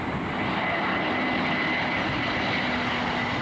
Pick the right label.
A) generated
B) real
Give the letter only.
B